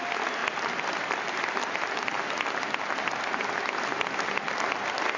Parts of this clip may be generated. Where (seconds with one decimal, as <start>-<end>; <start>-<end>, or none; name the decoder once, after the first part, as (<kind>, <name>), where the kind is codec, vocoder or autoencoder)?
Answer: 0.4-3.5 (vocoder, BigVGAN v2)